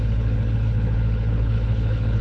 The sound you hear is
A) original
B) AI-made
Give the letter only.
B